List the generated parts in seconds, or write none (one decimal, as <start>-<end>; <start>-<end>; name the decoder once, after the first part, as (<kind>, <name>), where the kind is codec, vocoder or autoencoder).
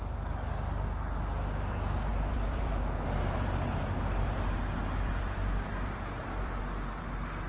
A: 2.1-6.6 (vocoder, BigVGAN v2)